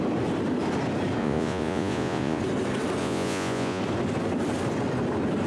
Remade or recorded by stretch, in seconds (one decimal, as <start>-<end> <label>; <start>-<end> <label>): 0.0-1.2 recorded; 1.2-2.4 remade; 2.4-3.0 recorded; 3.0-3.8 remade; 3.8-5.5 recorded